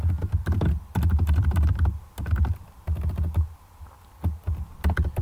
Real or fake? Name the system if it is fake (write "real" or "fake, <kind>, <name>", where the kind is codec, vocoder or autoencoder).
real